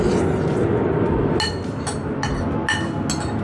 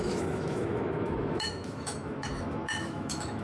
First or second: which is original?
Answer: first